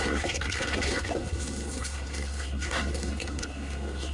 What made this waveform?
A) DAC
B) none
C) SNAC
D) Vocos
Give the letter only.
C